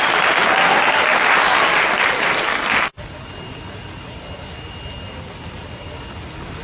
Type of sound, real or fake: real